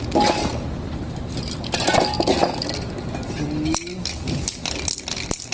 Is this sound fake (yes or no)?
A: no